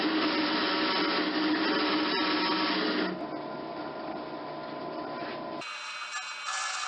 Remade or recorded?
recorded